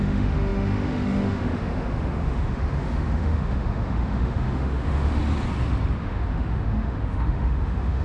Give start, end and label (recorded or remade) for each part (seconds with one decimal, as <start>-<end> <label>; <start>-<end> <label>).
0.0-5.2 remade; 5.2-6.0 recorded; 6.0-8.0 remade